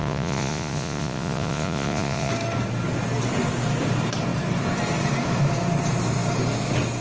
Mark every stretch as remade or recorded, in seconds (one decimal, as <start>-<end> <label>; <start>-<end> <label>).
0.0-2.3 remade; 2.3-7.0 recorded